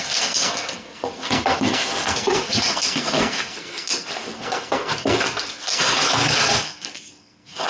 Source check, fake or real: fake